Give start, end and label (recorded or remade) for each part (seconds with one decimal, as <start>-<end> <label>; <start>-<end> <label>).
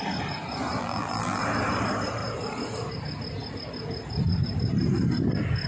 0.0-0.8 recorded; 0.8-1.4 remade; 1.4-5.7 recorded